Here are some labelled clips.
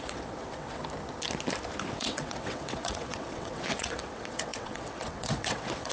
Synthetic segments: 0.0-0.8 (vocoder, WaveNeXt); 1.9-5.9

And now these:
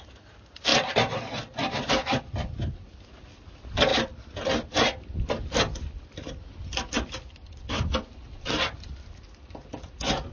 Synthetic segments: 0.7-2.2 (vocoder, BigVGAN v2); 3.9-8.8